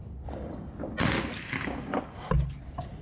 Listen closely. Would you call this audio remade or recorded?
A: recorded